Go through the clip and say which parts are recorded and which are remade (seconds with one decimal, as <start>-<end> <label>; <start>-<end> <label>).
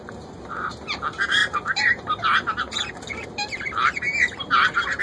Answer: 0.0-5.0 remade